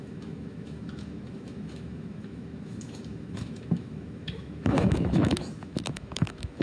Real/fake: fake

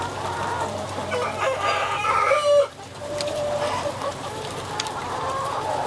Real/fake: fake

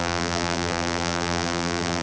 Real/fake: fake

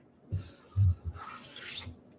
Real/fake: real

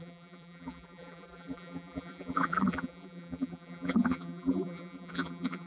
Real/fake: fake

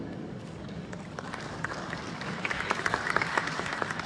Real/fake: fake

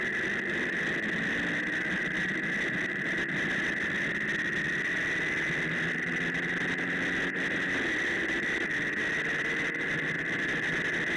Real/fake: real